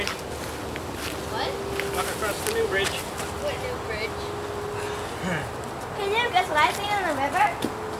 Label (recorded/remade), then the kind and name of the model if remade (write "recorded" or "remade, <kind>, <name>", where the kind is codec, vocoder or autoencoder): recorded